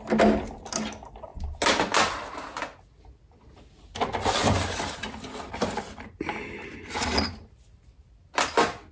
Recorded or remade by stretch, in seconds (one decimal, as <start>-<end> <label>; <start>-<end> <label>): 0.0-8.9 recorded